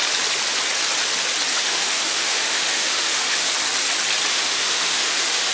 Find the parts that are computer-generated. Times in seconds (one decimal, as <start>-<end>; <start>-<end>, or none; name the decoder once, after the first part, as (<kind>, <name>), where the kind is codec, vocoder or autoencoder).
1.5-3.5 (autoencoder, DAC-VAE); 4.3-5.5